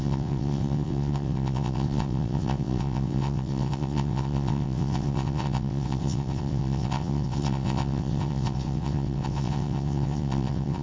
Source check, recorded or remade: remade